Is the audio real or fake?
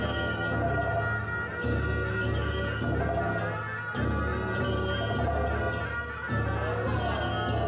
real